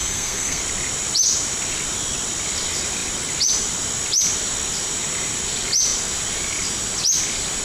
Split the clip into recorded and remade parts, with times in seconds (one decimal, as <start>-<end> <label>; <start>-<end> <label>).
0.0-0.6 remade; 0.6-7.6 recorded